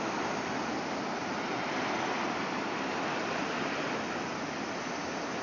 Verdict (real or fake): real